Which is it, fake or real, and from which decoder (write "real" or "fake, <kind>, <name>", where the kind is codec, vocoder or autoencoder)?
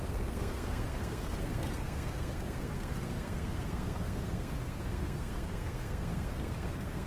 fake, codec, SNAC